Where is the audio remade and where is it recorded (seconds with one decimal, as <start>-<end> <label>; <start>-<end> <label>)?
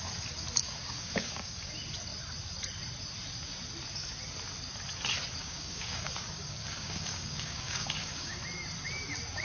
0.0-0.6 recorded; 0.6-1.7 remade; 1.7-5.4 recorded; 5.4-8.4 remade; 8.4-9.4 recorded